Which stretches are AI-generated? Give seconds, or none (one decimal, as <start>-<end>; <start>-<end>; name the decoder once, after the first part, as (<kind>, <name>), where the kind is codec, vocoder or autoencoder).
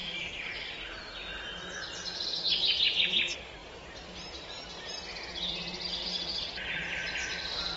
0.0-0.5 (vocoder, BigVGAN v2); 3.6-4.5